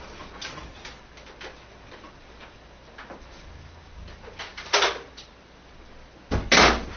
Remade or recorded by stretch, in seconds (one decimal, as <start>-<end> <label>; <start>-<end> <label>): 0.0-7.0 recorded